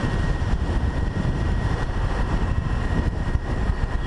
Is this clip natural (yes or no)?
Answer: no